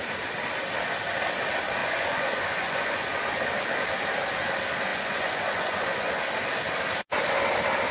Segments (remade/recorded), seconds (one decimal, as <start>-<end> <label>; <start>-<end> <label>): 0.0-1.8 recorded; 1.8-3.4 remade; 3.4-4.9 recorded; 4.9-6.1 remade; 6.1-7.9 recorded